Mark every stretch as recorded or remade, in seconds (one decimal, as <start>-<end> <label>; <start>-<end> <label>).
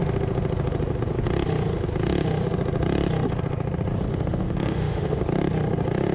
0.0-4.1 recorded; 4.1-5.2 remade; 5.2-6.1 recorded